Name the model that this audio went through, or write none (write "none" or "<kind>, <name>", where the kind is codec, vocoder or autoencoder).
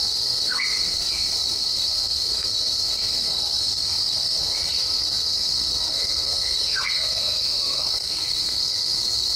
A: codec, SNAC